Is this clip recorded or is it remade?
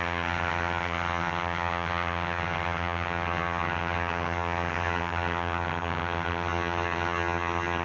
remade